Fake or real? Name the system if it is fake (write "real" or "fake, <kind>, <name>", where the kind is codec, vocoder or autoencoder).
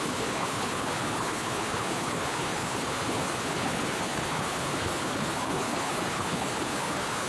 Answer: fake, codec, HILCodec